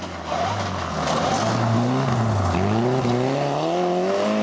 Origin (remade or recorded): recorded